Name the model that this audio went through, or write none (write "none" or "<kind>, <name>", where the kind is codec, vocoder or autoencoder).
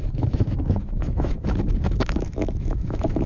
autoencoder, DAC-VAE